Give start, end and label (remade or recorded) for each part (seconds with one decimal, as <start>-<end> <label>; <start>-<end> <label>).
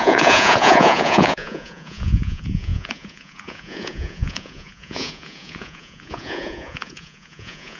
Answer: 0.0-7.8 remade